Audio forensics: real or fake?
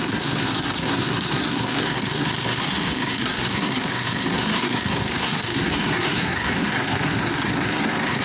fake